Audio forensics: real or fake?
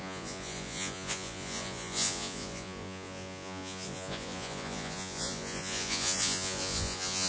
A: fake